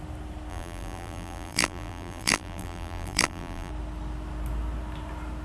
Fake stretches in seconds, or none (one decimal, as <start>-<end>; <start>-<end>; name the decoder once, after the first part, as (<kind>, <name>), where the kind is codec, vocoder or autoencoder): 0.5-3.7 (vocoder, BigVGAN v2)